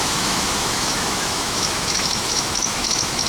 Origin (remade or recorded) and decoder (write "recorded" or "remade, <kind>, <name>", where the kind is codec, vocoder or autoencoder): remade, autoencoder, DAC-VAE